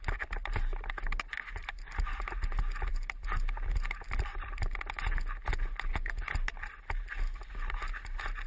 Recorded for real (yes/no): yes